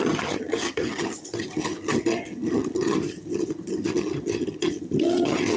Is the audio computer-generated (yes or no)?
yes